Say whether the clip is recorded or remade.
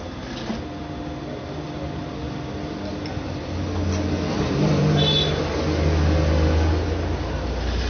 recorded